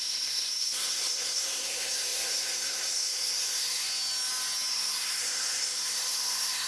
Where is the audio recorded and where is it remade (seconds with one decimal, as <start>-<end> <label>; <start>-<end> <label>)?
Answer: 0.0-3.8 remade; 3.8-4.7 recorded; 4.7-6.7 remade

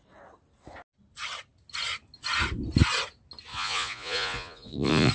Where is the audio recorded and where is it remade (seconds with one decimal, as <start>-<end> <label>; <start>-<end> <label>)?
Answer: 0.0-3.5 recorded; 3.5-5.1 remade